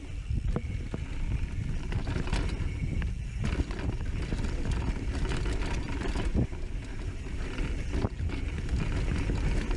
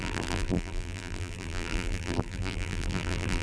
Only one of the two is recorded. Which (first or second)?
first